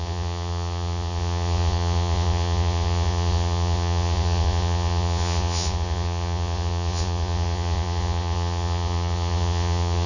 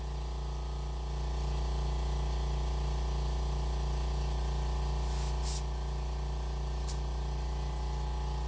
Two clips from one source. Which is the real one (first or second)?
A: second